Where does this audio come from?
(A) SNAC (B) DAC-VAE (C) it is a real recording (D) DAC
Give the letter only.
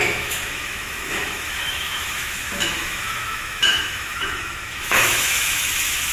B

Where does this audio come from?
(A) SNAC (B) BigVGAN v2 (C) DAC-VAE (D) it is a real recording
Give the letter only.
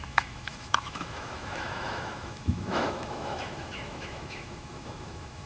C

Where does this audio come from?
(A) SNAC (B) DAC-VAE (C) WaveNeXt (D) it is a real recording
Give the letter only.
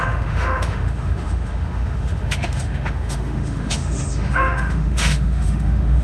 B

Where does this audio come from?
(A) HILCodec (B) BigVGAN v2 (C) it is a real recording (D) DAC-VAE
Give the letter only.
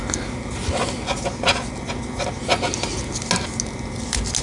C